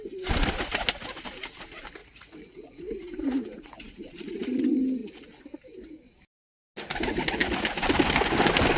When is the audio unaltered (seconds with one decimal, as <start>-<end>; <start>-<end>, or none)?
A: 0.0-2.0; 4.6-8.8